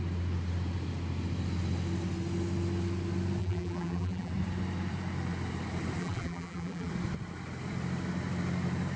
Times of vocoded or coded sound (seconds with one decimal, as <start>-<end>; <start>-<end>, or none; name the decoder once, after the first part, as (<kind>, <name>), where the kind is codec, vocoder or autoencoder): 3.4-4.3 (vocoder, BigVGAN v2); 6.0-6.9

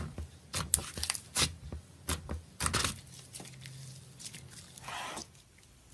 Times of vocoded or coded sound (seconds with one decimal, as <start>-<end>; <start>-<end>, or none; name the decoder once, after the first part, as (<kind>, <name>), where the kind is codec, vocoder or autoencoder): none